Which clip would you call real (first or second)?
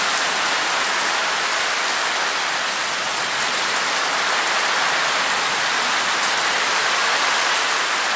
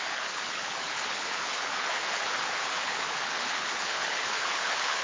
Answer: first